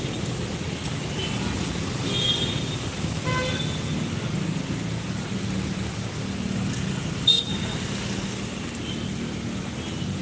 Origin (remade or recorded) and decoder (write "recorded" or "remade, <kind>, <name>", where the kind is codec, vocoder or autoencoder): recorded